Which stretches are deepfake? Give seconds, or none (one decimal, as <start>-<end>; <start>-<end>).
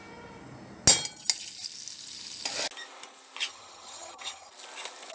3.5-4.5